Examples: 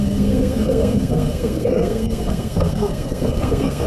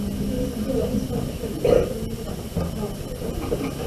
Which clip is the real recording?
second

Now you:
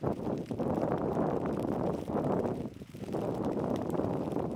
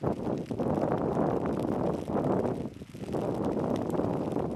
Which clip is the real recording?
second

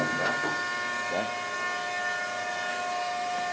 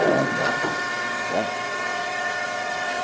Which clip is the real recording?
first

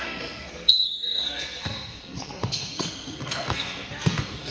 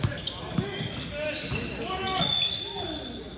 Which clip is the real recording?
second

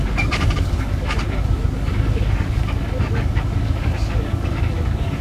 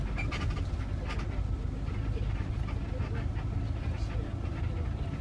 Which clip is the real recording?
second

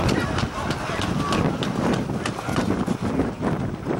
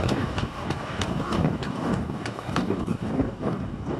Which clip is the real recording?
first